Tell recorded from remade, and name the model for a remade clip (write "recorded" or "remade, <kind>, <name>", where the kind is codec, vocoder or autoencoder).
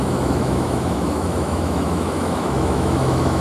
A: remade, autoencoder, DAC-VAE